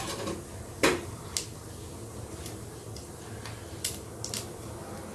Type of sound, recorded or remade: recorded